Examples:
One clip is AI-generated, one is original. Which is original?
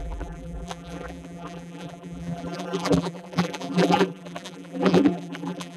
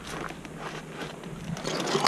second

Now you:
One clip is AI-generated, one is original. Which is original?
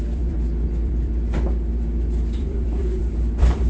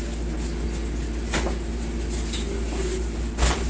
second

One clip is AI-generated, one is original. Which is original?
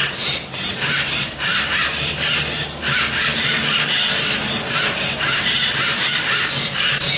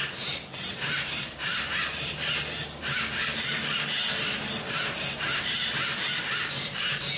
second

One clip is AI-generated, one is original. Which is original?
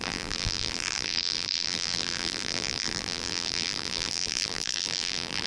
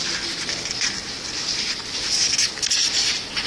second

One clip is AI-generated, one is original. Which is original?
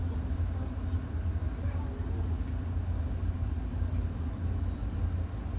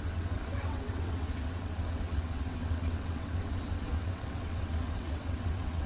first